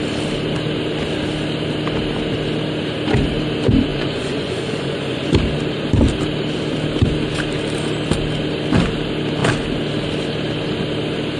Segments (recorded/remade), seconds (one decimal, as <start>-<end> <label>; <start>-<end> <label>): 0.0-3.9 recorded; 3.9-5.3 remade; 5.3-11.4 recorded